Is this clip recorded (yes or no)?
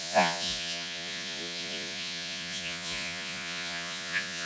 no